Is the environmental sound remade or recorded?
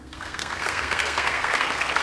remade